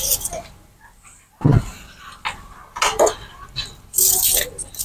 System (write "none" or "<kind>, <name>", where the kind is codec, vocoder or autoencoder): none